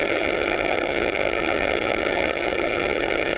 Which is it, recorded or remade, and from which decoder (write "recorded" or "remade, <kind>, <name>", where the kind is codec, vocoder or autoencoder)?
remade, vocoder, HiFi-GAN